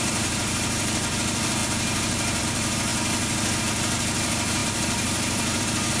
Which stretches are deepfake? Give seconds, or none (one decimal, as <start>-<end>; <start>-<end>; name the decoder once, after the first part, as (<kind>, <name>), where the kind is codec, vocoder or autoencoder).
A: 0.0-2.9 (vocoder, BigVGAN v2); 3.6-6.0

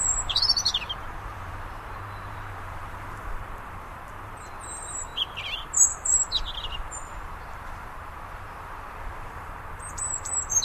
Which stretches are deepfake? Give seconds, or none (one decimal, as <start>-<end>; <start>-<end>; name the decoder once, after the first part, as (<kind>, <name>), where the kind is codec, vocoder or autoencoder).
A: 0.0-5.1 (vocoder, BigVGAN v2); 7.2-10.6

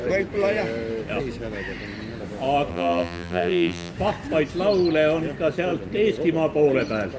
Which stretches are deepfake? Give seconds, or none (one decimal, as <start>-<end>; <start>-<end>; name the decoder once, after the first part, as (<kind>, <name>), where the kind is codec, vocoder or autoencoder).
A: 2.7-3.9 (vocoder, BigVGAN v2)